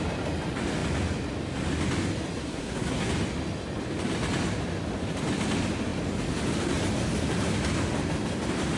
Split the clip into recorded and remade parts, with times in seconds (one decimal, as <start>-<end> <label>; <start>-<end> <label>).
0.0-2.4 recorded; 2.4-3.1 remade; 3.1-8.8 recorded